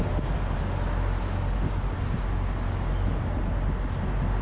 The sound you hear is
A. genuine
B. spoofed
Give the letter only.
A